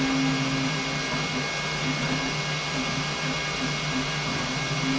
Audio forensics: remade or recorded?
recorded